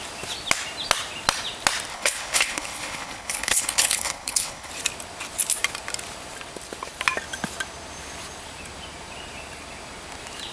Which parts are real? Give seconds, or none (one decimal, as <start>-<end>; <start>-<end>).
0.0-1.9; 4.7-10.5